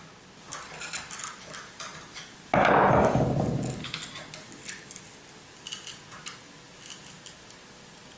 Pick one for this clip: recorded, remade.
recorded